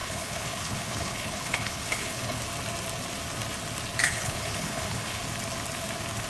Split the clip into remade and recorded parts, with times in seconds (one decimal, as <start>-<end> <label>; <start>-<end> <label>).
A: 0.0-2.4 remade; 2.4-4.0 recorded; 4.0-5.2 remade; 5.2-6.3 recorded